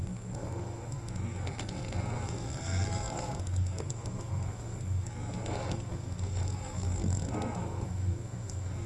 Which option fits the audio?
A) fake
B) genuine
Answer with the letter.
A